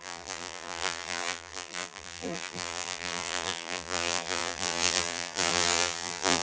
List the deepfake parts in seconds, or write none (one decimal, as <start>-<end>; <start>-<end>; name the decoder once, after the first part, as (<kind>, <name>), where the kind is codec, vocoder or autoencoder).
0.0-6.4 (vocoder, BigVGAN v2)